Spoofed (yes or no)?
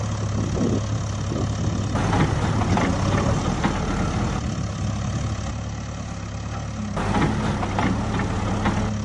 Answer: no